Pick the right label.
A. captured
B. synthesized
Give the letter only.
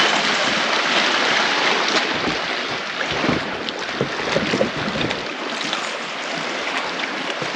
A